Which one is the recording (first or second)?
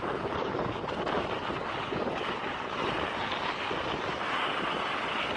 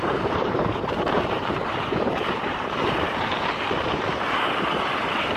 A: first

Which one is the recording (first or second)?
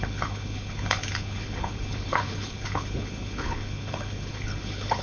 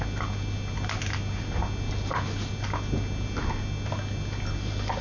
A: second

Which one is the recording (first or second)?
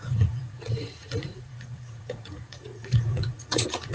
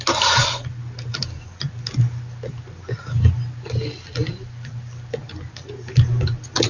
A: second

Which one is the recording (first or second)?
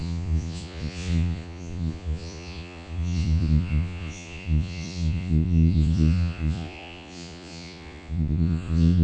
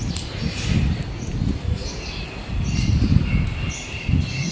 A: second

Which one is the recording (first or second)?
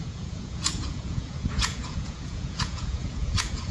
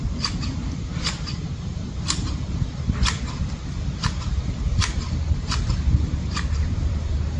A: second